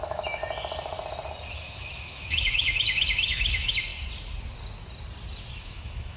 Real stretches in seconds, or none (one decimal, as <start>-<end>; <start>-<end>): 0.4-1.5; 3.9-5.5